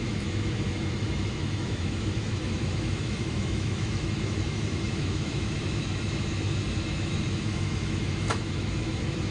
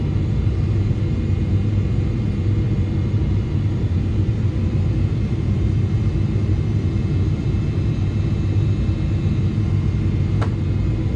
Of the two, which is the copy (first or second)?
first